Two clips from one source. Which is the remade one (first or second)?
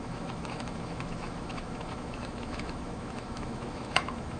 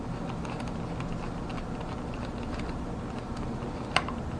first